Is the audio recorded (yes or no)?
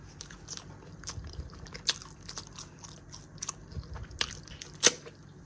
yes